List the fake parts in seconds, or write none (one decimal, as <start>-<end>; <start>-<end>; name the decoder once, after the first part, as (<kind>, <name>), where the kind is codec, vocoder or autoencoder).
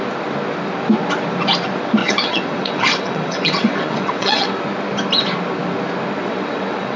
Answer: 2.0-4.6 (vocoder, WaveNeXt); 6.2-7.0